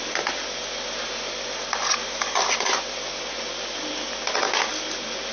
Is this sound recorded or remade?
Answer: recorded